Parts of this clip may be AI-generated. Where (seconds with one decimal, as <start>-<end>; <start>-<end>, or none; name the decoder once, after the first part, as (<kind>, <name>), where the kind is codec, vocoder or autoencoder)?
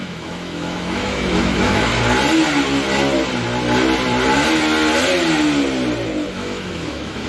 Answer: 0.0-1.9 (autoencoder, DAC-VAE); 6.3-7.3